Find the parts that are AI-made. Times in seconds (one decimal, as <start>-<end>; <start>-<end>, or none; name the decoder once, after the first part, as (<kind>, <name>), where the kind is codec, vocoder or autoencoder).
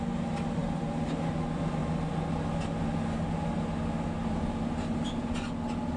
0.6-1.3 (vocoder, BigVGAN v2); 4.2-5.0